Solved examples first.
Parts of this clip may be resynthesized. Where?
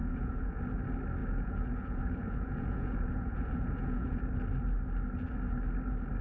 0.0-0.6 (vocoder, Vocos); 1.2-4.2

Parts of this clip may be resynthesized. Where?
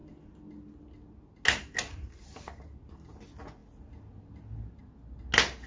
none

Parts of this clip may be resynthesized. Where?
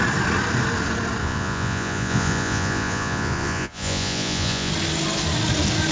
1.2-4.7 (vocoder, Vocos)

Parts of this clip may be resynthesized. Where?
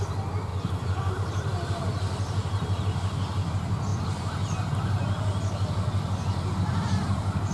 0.5-1.1 (vocoder, Vocos)